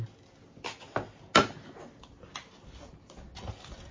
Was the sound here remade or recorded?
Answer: recorded